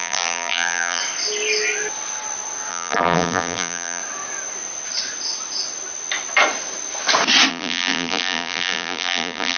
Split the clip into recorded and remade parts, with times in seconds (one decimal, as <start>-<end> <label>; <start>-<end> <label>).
0.0-1.0 remade; 1.0-2.7 recorded; 2.7-4.0 remade; 4.0-7.5 recorded; 7.5-9.6 remade

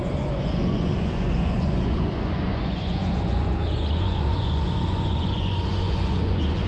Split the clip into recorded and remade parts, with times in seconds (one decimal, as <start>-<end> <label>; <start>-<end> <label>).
0.0-6.7 remade

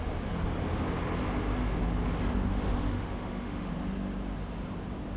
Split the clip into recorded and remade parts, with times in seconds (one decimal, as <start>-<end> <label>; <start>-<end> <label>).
0.0-2.9 recorded; 2.9-3.7 remade; 3.7-5.2 recorded